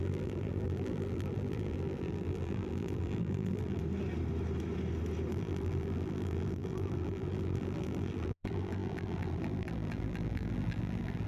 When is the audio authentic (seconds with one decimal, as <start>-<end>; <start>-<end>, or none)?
3.8-5.3